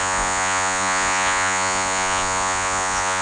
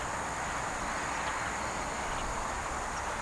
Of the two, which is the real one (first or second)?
second